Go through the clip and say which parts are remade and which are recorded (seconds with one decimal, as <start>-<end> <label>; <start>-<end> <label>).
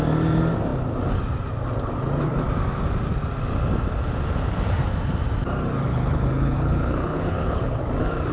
0.0-5.9 recorded; 5.9-7.8 remade; 7.8-8.3 recorded